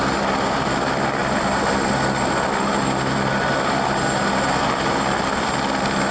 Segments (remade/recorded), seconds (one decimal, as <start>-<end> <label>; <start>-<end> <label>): 0.0-6.1 recorded